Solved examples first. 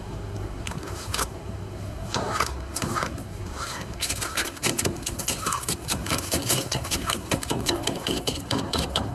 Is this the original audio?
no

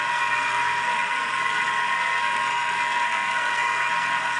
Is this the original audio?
no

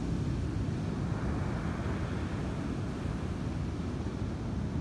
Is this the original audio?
yes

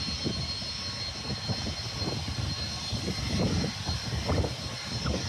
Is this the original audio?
yes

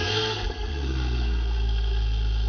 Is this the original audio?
no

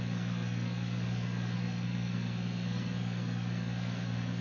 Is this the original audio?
no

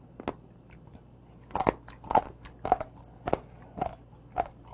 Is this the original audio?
yes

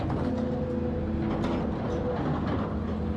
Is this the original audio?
yes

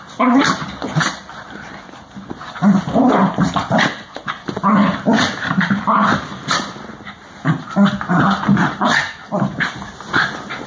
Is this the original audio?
yes